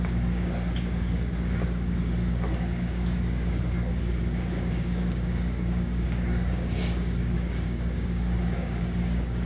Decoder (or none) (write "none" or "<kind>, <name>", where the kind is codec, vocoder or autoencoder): codec, DAC